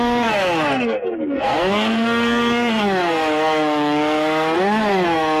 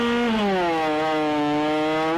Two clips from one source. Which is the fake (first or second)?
first